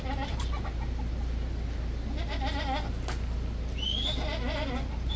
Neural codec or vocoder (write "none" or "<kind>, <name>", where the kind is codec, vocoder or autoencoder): none